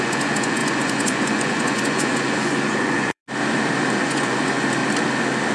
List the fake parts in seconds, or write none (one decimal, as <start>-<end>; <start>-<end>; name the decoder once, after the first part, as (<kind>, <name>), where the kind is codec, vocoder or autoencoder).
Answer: 0.0-3.2 (vocoder, Vocos); 4.0-4.8